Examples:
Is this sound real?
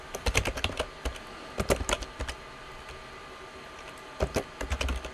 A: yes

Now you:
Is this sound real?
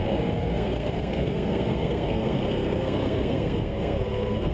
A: no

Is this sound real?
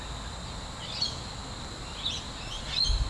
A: yes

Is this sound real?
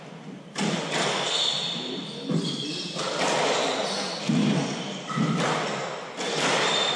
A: yes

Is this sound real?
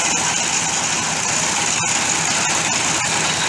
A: yes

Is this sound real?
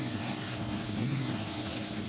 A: no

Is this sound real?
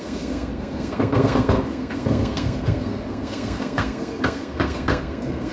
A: no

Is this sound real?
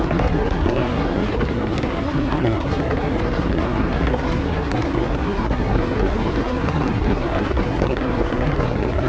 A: no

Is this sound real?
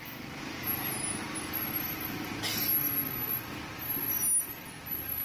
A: yes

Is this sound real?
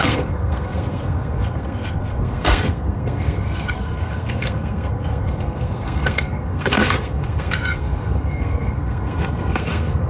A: no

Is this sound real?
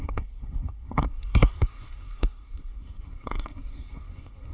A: no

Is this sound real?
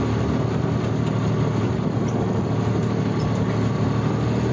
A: yes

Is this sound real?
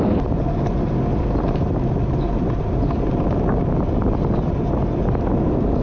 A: yes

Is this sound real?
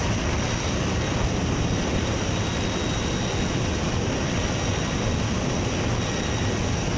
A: yes